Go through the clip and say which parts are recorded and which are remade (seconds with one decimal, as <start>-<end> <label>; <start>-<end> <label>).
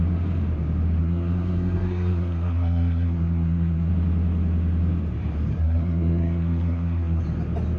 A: 0.0-1.0 recorded; 1.0-3.9 remade; 3.9-5.5 recorded; 5.5-7.2 remade; 7.2-7.8 recorded